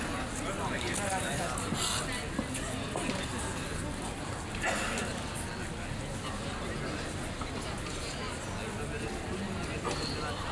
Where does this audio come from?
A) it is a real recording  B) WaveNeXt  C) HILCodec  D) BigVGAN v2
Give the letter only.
A